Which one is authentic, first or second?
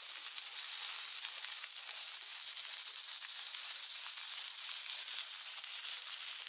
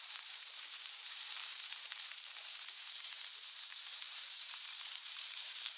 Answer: first